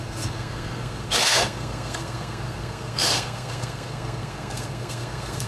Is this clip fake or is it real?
fake